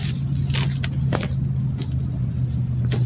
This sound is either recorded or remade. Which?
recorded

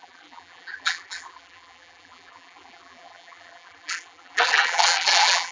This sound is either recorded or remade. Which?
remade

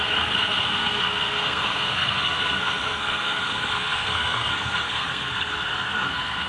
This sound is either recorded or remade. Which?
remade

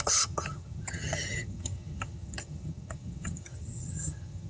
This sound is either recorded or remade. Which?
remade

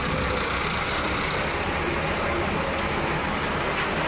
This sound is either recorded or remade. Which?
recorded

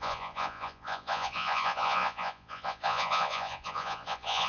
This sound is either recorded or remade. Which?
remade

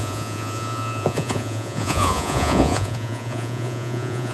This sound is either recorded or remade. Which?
remade